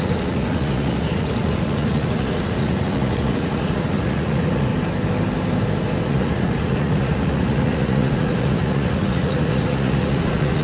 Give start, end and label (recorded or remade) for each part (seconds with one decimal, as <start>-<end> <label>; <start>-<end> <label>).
0.0-4.7 remade; 4.7-6.0 recorded; 6.0-10.6 remade